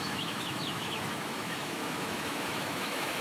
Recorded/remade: remade